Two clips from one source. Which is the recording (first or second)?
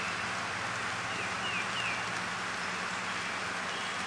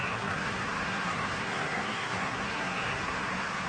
first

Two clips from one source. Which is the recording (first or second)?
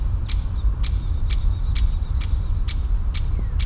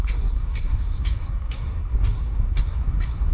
first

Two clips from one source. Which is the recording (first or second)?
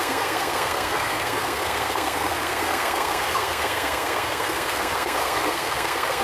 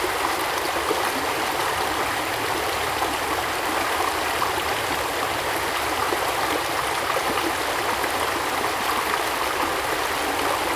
second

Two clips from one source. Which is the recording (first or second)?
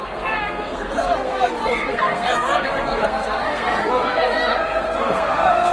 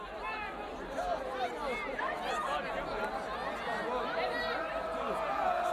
second